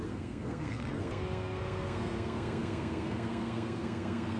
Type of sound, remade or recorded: remade